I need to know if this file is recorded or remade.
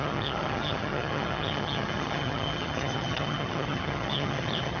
remade